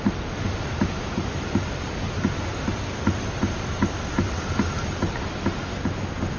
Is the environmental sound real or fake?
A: real